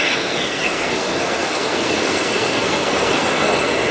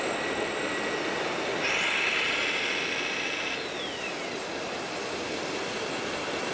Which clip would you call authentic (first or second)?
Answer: second